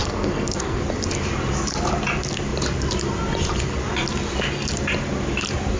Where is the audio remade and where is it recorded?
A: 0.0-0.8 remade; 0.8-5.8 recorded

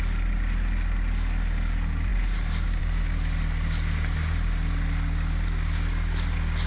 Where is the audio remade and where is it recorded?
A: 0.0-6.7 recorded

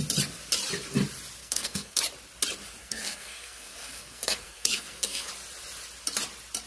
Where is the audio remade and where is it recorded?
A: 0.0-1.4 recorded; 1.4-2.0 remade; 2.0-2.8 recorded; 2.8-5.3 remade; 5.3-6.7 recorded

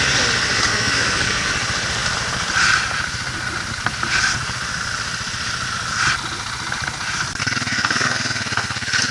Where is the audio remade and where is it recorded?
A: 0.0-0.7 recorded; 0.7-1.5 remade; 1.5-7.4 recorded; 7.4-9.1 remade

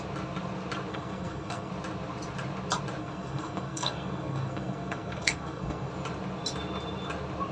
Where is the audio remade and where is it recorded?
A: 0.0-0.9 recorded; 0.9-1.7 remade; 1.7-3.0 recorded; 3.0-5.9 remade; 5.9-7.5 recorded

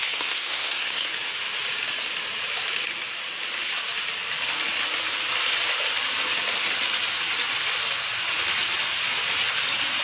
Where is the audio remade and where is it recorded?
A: 0.0-1.1 remade; 1.1-10.0 recorded

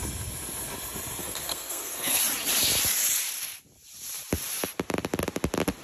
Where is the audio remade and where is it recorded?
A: 0.0-1.2 recorded; 1.2-2.2 remade; 2.2-5.8 recorded